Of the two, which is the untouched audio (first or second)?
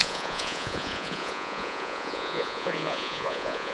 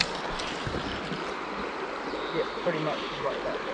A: second